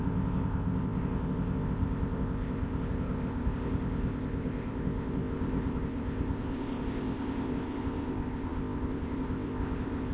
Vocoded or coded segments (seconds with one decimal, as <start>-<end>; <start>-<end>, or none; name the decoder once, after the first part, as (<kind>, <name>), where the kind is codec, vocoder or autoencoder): 0.0-10.1 (codec, ZipCodec)